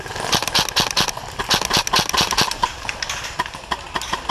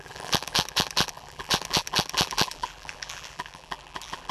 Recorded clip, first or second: first